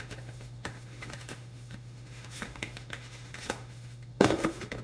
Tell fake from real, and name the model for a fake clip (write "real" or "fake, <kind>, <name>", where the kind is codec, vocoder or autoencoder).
fake, autoencoder, DAC-VAE